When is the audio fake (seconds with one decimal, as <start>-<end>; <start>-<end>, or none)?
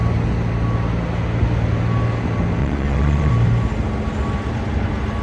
2.6-3.3